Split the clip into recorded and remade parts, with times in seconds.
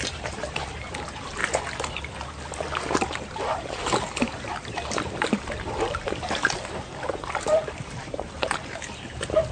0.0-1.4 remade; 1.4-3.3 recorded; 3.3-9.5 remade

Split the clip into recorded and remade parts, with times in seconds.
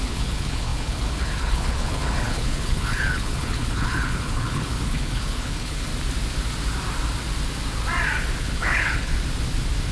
0.0-5.9 remade; 5.9-8.4 recorded; 8.4-9.1 remade; 9.1-9.9 recorded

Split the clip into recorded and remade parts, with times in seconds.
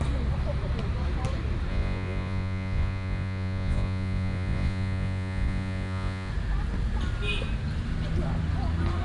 0.0-1.7 recorded; 1.7-6.3 remade; 6.3-9.0 recorded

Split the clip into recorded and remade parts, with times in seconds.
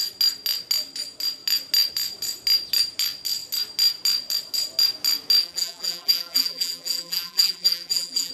0.0-5.4 recorded; 5.4-8.3 remade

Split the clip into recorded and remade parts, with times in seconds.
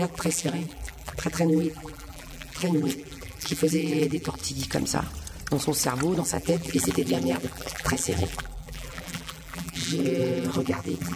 0.0-4.4 remade; 4.4-6.2 recorded; 6.2-11.2 remade